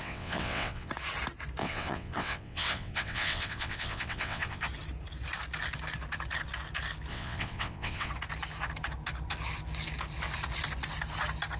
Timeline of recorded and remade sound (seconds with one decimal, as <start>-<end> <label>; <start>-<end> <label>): 0.0-0.9 remade; 0.9-1.6 recorded; 1.6-4.6 remade; 4.6-7.1 recorded; 7.1-8.1 remade; 8.1-11.6 recorded